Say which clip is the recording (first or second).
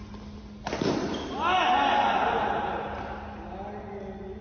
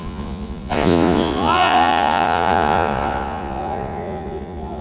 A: first